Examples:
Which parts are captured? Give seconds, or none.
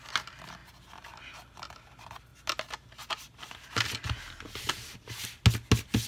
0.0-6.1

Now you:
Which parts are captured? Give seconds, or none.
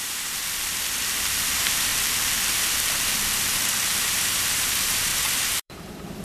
0.4-1.5; 1.9-4.0; 5.1-5.6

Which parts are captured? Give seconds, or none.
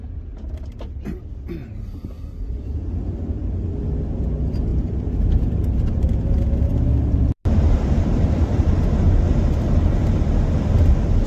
0.0-4.7; 6.0-7.4; 8.7-11.3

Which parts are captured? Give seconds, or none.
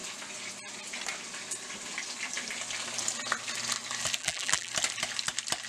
0.0-4.2; 4.7-5.7